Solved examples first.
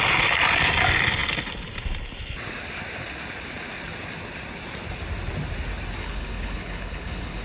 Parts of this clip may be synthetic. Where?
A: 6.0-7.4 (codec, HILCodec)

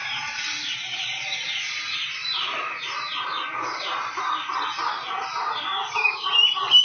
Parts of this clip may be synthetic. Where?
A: 0.0-6.8 (vocoder, BigVGAN v2)

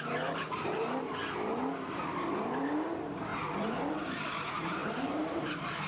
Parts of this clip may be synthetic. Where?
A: 0.0-1.2 (vocoder, BigVGAN v2); 1.9-3.3; 3.9-5.9

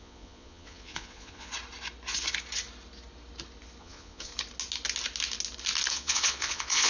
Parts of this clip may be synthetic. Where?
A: 0.0-1.5 (vocoder, Vocos); 3.8-4.3; 5.9-6.9